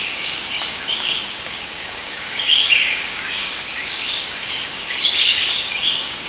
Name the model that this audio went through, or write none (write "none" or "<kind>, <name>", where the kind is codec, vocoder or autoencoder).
codec, DAC